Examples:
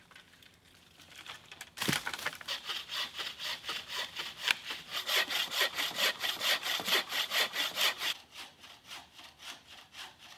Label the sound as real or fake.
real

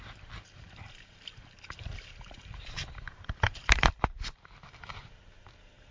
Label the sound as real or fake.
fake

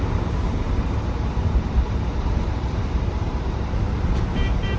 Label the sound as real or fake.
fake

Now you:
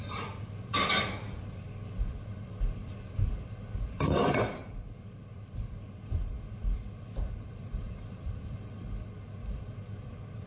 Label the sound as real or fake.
fake